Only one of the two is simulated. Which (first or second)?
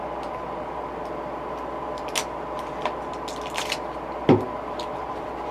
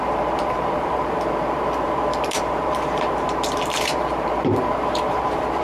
second